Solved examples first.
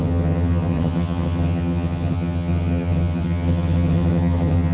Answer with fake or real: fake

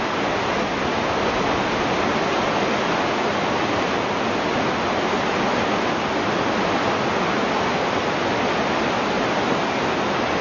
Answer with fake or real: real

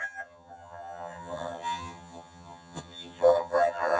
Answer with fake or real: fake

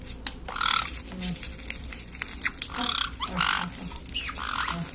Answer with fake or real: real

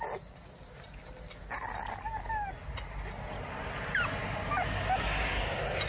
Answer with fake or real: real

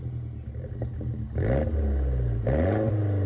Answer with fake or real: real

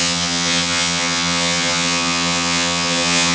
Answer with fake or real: fake